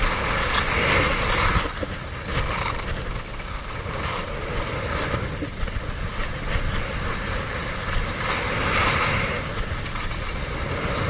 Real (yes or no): yes